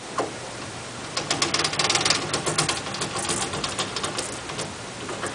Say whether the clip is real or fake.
real